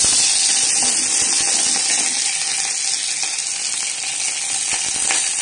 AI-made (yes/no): no